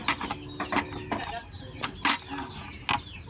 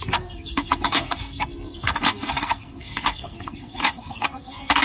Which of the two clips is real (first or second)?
first